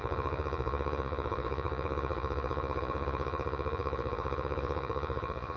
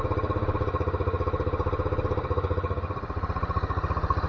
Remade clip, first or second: first